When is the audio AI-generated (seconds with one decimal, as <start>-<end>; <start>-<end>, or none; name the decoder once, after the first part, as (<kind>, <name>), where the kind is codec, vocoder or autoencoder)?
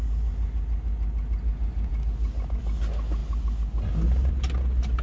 none